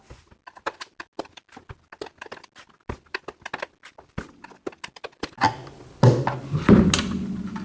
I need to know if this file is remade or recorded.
recorded